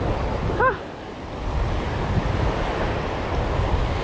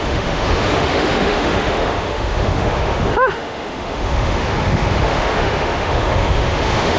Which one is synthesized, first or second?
second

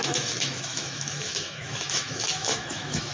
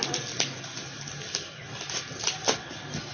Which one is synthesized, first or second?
first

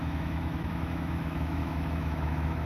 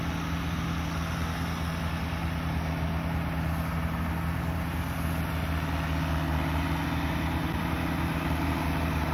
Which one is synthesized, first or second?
first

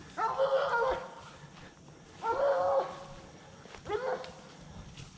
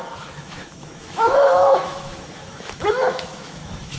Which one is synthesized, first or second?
second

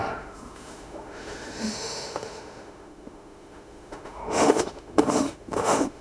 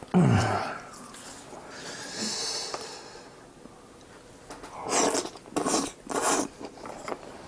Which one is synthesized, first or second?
first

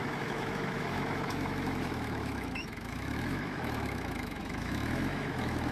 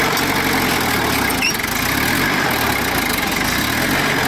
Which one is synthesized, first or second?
first